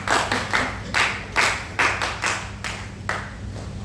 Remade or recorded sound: recorded